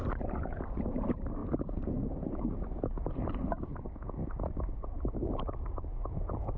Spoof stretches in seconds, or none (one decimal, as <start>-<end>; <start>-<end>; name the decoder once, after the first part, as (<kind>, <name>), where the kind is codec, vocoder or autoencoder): 0.0-1.4 (vocoder, BigVGAN v2); 5.4-6.6